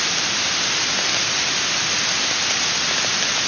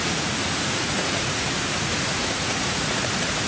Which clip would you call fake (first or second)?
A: second